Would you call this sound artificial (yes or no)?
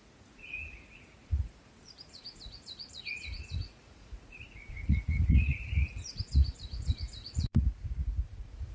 yes